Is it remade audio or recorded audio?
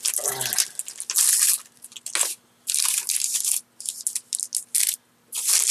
recorded